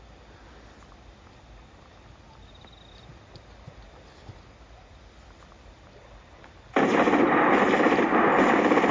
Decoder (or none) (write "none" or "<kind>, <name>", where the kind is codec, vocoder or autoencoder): none